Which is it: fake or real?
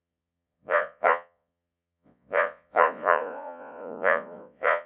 fake